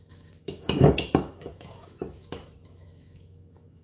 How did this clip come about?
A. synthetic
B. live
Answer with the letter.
A